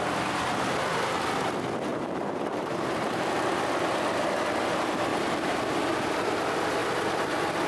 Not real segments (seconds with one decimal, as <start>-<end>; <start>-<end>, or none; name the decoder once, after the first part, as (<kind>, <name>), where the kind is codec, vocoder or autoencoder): 1.9-3.6 (vocoder, BigVGAN v2); 5.1-5.6